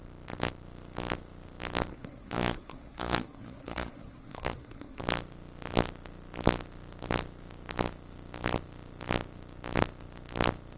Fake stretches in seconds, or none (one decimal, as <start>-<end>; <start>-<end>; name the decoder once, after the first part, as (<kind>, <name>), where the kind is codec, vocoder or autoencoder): 1.9-5.0 (codec, SNAC)